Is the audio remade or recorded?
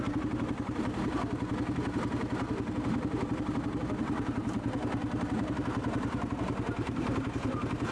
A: remade